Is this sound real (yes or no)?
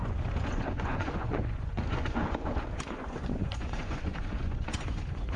no